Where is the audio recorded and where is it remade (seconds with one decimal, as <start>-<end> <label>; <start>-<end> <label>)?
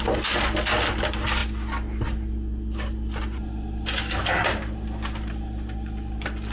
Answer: 0.0-6.5 recorded